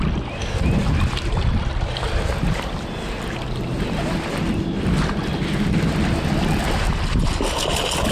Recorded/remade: recorded